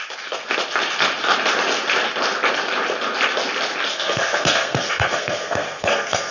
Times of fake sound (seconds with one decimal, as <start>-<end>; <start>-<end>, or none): 3.9-6.3